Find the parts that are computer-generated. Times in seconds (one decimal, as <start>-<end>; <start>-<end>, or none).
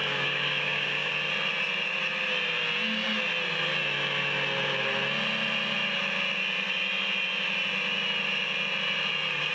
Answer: 0.0-1.1